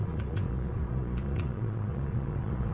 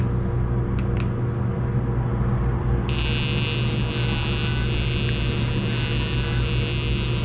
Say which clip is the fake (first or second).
first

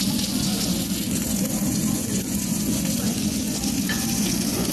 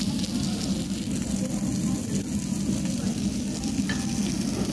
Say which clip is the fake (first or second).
first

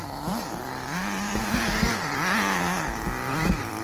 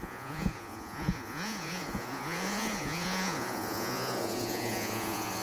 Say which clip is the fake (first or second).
second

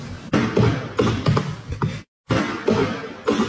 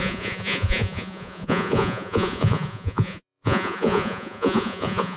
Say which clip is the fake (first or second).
second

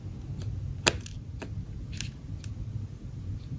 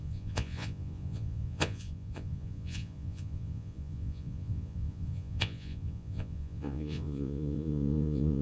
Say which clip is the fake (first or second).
second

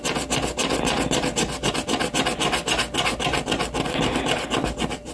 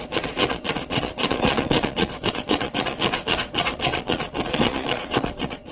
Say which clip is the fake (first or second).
second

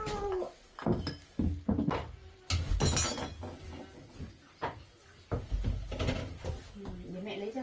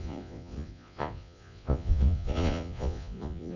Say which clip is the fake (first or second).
second